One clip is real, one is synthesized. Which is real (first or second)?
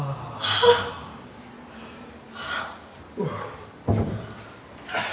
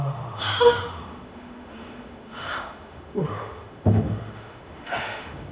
first